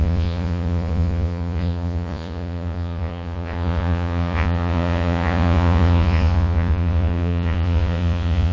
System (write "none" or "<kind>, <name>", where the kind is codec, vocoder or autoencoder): vocoder, Vocos